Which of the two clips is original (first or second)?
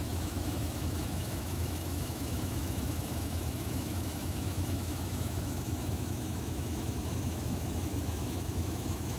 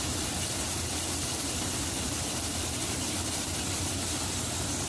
second